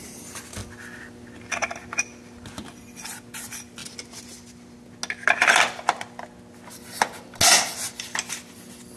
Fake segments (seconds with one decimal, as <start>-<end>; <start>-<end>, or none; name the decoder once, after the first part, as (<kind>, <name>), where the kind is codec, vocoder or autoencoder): none